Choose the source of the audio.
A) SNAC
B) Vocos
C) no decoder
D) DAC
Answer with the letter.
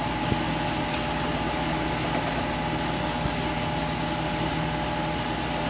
C